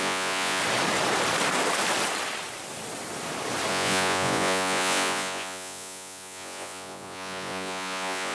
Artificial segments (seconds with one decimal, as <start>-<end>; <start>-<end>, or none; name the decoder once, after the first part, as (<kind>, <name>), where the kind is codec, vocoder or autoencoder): 0.0-0.6 (vocoder, Vocos); 3.7-8.3